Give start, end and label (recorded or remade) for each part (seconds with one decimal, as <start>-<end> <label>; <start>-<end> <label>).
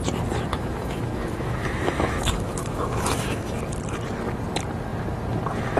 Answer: 0.0-0.5 recorded; 0.5-3.6 remade; 3.6-5.8 recorded